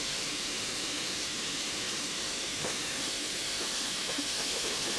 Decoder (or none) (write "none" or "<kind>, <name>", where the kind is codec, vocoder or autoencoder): autoencoder, DAC-VAE